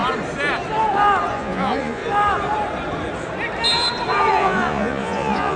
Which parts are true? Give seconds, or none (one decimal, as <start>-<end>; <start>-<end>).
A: 0.0-1.3; 2.0-4.3